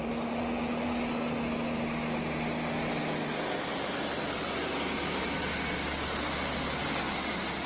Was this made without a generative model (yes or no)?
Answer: yes